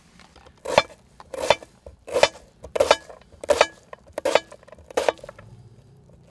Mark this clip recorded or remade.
recorded